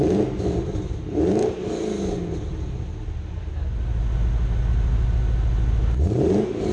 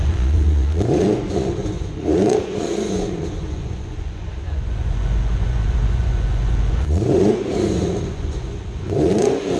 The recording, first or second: first